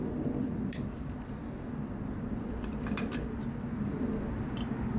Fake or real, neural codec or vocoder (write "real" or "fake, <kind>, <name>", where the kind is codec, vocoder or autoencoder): fake, vocoder, BigVGAN v2